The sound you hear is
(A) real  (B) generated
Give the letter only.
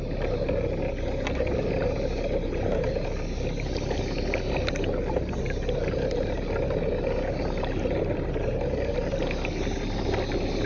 A